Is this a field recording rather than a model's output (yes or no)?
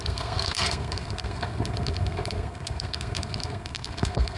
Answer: no